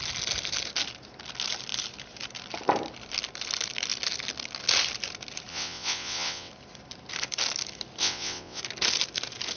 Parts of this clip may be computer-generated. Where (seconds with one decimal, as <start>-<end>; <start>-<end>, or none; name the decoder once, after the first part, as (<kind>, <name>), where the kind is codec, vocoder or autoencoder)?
5.5-6.5 (vocoder, WaveNeXt); 8.0-8.6